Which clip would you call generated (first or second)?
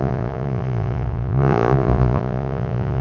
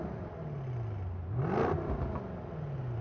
first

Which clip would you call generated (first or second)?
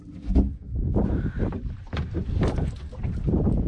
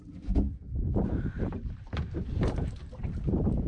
second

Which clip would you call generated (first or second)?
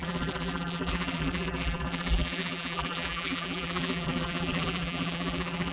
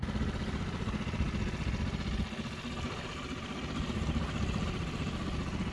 first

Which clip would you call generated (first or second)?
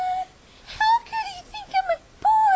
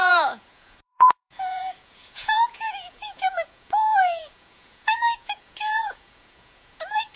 second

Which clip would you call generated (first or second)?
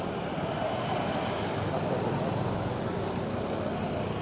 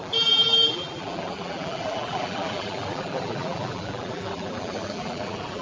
second